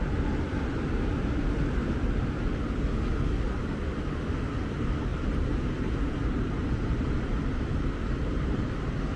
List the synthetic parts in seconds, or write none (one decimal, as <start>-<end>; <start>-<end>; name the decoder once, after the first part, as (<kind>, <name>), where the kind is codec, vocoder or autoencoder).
0.5-1.4 (vocoder, BigVGAN v2); 5.1-8.6